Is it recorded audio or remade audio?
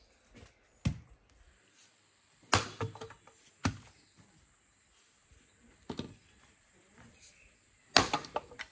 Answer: recorded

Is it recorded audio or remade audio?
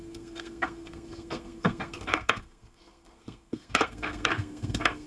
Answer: remade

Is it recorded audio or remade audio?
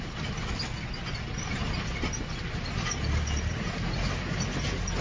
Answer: recorded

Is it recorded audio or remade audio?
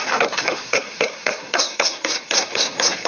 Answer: remade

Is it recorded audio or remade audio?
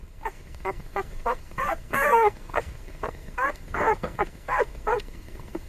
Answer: remade